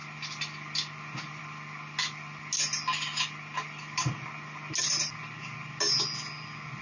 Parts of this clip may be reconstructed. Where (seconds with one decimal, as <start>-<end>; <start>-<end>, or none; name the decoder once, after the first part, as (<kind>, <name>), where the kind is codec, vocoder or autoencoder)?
none